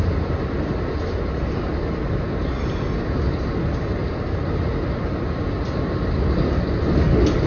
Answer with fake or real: real